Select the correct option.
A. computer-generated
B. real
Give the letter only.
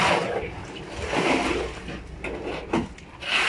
A